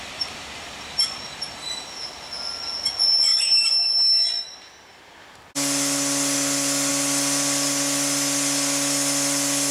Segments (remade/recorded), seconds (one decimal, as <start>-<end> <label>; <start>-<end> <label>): 0.0-9.7 recorded